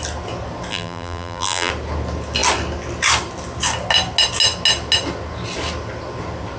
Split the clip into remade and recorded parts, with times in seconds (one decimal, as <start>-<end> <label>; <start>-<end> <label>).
0.0-0.7 recorded; 0.7-1.7 remade; 1.7-6.6 recorded